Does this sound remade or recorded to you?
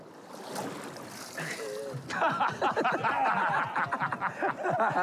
recorded